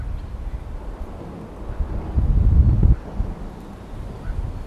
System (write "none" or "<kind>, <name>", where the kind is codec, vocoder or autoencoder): none